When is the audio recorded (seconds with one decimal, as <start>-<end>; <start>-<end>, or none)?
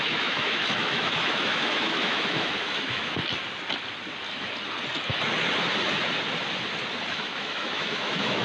3.2-7.1